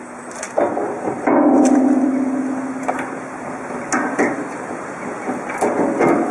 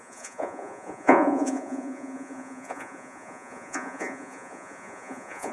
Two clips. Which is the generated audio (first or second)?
second